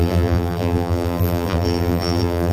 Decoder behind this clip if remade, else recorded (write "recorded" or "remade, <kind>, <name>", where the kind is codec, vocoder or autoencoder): remade, vocoder, BigVGAN v2